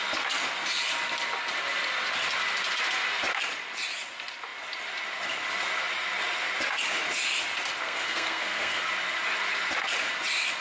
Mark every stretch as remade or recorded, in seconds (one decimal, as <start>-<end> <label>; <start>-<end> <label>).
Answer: 0.0-7.8 recorded; 7.8-8.8 remade; 8.8-10.6 recorded

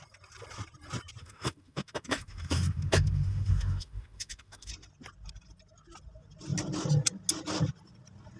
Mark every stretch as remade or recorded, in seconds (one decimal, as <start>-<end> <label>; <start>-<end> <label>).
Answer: 0.0-1.2 recorded; 1.2-4.7 remade; 4.7-8.4 recorded

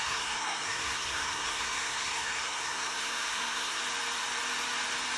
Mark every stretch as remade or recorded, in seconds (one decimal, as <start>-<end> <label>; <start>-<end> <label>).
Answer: 0.0-3.8 remade; 3.8-5.2 recorded

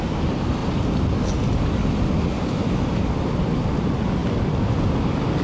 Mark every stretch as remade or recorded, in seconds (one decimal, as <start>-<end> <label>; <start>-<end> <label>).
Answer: 0.0-5.4 recorded

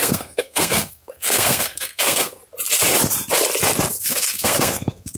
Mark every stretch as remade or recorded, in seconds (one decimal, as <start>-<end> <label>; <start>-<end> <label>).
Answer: 0.0-2.4 remade; 2.4-3.9 recorded; 3.9-5.2 remade

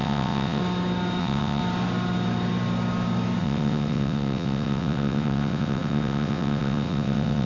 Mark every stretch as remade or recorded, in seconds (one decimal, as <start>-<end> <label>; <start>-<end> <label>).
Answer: 0.0-0.6 remade; 0.6-1.2 recorded; 1.2-1.6 remade; 1.6-3.4 recorded; 3.4-7.5 remade

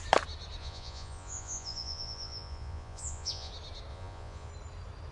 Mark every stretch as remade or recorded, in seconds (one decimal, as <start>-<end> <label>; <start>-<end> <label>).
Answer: 0.0-0.6 recorded; 0.6-3.5 remade; 3.5-3.9 recorded; 3.9-4.5 remade; 4.5-5.1 recorded